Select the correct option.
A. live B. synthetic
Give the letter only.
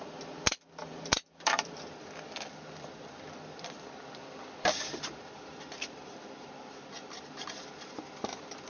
B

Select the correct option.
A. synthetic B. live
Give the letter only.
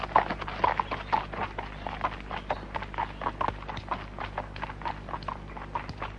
B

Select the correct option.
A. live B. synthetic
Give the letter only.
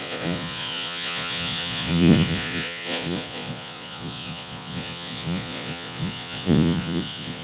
B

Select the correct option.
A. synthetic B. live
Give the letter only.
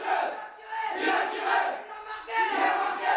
B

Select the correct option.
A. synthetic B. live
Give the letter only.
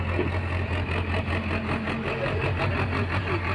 B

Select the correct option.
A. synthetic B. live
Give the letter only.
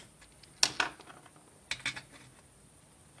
B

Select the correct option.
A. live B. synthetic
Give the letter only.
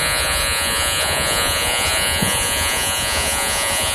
B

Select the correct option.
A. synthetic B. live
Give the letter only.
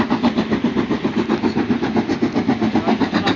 B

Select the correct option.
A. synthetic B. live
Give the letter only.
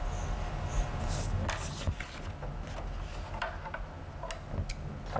B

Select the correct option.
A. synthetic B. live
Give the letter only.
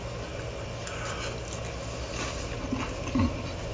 B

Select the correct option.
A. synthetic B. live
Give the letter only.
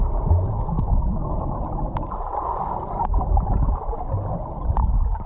B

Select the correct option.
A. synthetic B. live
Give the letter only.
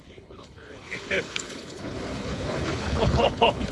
A